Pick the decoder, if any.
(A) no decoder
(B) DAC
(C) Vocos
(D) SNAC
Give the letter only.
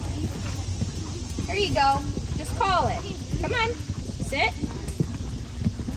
A